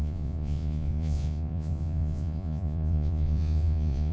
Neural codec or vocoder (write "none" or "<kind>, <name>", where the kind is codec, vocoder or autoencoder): vocoder, Vocos